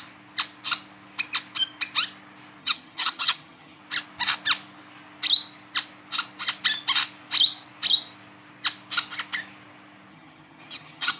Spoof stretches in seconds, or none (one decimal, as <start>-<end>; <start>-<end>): 2.6-3.8; 10.1-11.2